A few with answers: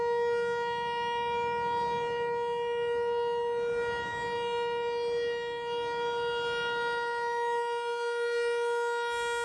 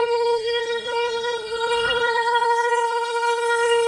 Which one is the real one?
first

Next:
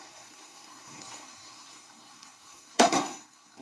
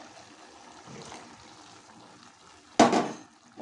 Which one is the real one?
second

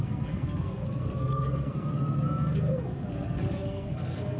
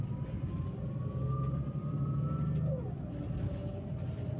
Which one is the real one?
second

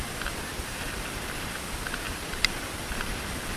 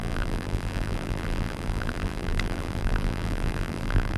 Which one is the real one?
first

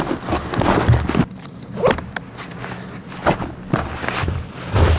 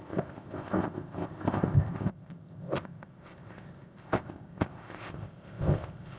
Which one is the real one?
first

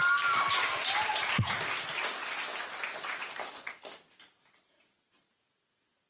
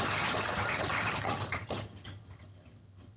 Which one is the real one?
first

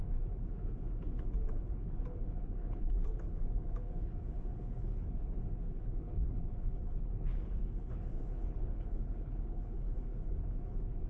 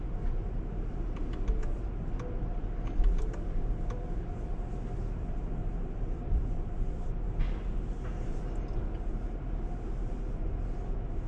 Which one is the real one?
second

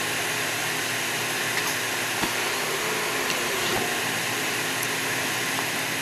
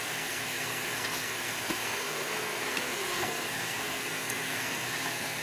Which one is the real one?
first